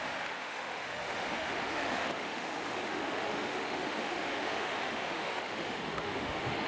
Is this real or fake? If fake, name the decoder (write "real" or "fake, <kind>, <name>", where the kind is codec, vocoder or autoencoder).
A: fake, autoencoder, DAC-VAE